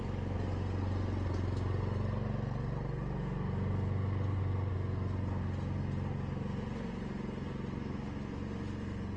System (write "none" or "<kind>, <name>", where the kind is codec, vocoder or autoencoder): none